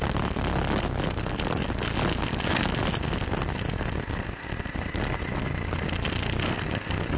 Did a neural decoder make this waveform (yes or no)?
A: no